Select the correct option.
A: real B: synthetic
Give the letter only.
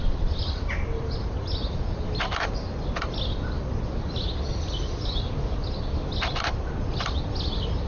A